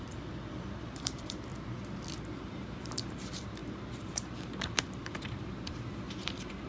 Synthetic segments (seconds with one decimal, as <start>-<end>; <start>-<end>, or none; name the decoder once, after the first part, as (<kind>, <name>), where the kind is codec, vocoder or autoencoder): 0.0-1.5 (vocoder, BigVGAN v2); 2.4-6.7